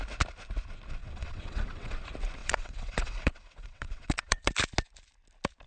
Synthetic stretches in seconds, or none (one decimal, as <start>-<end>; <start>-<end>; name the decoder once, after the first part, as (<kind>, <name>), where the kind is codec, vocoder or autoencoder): 1.0-1.9 (vocoder, WaveNeXt); 2.4-4.5